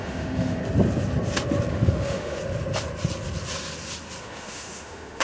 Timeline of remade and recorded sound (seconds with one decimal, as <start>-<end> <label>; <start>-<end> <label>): 0.0-0.6 remade; 0.6-1.7 recorded; 1.7-2.4 remade; 2.4-4.2 recorded; 4.2-5.2 remade